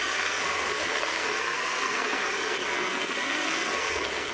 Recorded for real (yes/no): no